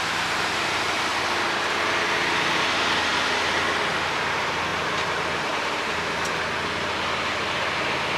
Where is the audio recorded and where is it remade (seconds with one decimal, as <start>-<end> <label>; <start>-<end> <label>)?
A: 0.0-8.2 recorded